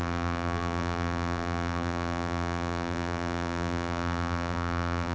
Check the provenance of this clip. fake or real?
fake